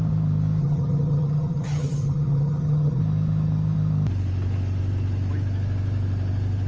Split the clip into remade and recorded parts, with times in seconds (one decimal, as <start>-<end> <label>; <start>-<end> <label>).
0.0-0.6 recorded; 0.6-3.0 remade; 3.0-6.7 recorded